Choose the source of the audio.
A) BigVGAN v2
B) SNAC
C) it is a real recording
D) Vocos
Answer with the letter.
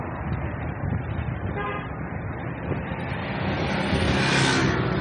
C